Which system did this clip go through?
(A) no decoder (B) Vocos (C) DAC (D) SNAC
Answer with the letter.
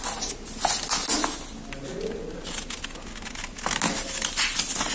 A